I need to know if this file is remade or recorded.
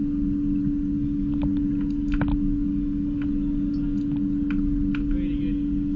recorded